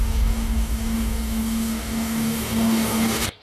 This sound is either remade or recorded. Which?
remade